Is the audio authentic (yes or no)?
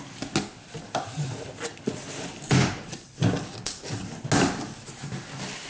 yes